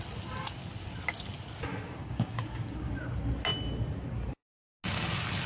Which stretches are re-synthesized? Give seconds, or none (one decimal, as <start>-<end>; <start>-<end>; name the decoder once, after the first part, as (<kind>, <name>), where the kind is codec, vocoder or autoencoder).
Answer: 2.0-2.9 (codec, DAC)